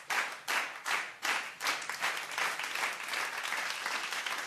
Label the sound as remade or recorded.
recorded